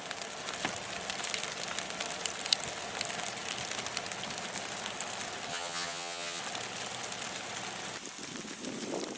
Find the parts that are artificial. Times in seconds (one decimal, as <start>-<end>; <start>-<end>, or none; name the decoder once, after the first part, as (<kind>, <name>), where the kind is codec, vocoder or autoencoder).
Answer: 5.5-6.4 (vocoder, HiFi-GAN)